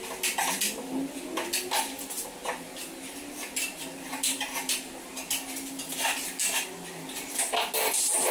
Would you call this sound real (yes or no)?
yes